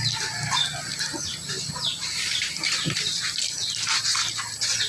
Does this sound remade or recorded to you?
recorded